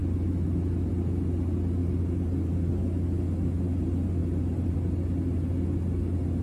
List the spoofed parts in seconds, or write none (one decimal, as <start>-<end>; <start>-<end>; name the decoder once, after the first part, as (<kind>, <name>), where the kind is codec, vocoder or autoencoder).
1.8-2.7 (vocoder, BigVGAN v2); 4.2-4.7